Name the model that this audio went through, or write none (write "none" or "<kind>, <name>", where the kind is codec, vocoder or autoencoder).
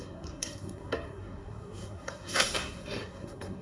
codec, SNAC